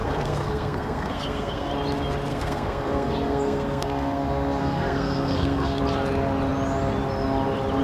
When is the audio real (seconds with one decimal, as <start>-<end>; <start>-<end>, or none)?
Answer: 1.7-2.3; 5.8-7.8

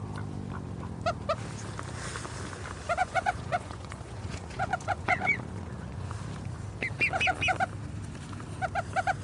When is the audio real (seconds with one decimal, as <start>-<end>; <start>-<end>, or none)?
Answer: 0.0-3.0; 6.1-9.2

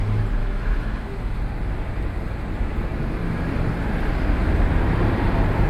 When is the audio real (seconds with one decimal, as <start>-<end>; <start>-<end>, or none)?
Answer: 0.0-0.4; 1.4-5.7